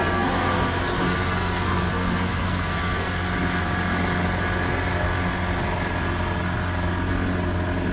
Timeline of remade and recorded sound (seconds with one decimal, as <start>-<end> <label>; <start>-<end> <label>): 0.0-3.1 remade; 3.1-7.9 recorded